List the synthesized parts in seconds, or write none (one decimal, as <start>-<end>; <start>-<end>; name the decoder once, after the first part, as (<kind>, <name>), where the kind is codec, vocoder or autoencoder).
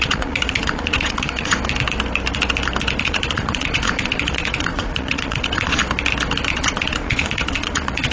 0.0-1.6 (vocoder, Vocos); 3.0-5.8; 6.5-8.1